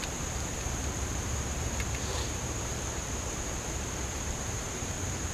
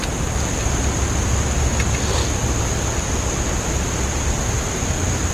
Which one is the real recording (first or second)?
second